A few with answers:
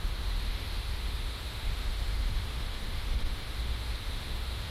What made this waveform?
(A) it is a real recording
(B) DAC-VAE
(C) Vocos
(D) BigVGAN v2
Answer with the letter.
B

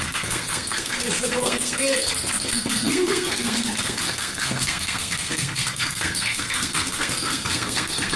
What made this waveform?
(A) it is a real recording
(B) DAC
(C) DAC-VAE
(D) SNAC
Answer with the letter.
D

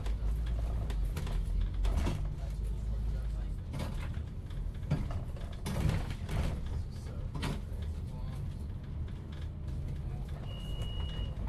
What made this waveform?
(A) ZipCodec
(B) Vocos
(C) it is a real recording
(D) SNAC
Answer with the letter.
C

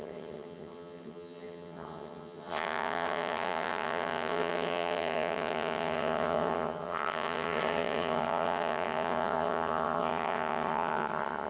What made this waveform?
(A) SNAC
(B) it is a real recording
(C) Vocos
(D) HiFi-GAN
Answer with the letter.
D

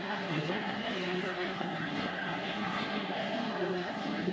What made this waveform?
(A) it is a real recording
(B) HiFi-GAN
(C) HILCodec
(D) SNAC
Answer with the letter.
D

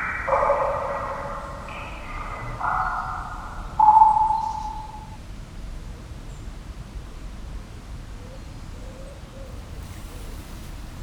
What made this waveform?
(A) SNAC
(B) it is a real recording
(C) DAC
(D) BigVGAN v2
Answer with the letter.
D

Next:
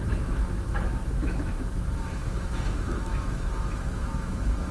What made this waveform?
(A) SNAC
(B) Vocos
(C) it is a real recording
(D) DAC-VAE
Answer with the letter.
D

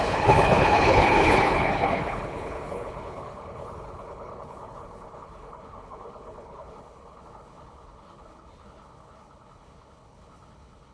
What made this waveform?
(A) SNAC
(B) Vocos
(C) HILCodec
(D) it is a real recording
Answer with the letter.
C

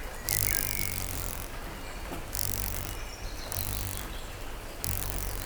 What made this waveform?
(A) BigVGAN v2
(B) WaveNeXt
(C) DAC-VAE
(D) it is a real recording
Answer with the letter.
D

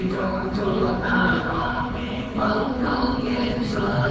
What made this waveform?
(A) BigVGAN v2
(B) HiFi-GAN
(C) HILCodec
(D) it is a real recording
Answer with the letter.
C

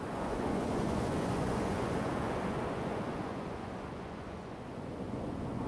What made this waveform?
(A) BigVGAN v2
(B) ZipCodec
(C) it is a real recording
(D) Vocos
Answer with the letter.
D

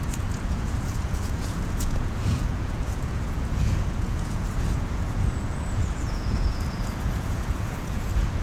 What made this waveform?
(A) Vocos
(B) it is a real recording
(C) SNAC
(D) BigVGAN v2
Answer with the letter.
A